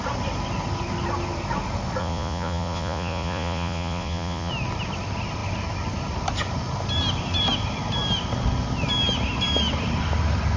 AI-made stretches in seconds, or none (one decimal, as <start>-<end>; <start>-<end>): 2.0-4.5